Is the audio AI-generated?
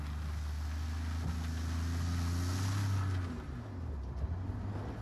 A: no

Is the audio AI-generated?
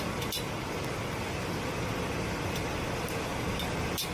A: no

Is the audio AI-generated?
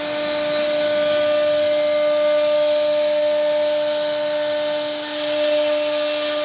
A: no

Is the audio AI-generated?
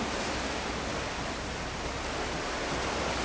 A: no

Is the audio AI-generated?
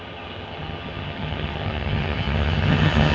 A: yes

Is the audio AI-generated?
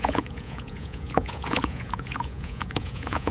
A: yes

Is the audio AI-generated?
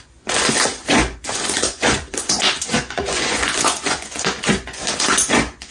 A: yes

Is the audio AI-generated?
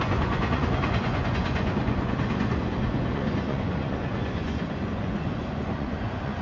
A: yes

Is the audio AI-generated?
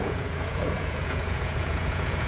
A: yes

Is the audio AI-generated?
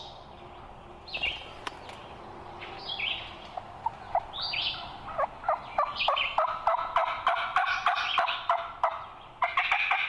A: no